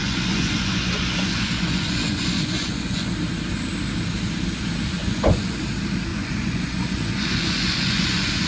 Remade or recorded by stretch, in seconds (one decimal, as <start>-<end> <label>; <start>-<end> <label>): 0.0-3.1 remade; 3.1-5.0 recorded; 5.0-5.6 remade; 5.6-6.1 recorded; 6.1-8.5 remade